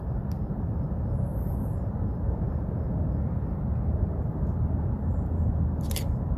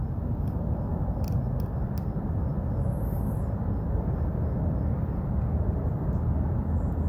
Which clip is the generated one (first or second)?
first